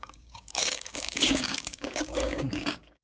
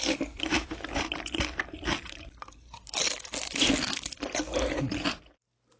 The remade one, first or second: first